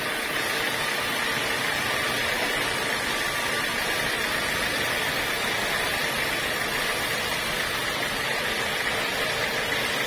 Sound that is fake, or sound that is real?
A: real